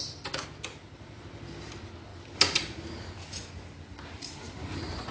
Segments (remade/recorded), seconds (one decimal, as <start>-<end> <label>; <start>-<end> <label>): 0.0-5.1 recorded